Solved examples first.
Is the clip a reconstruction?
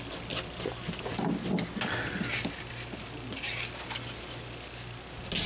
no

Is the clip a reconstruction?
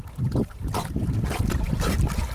no